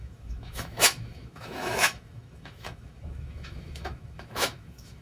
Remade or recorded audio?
remade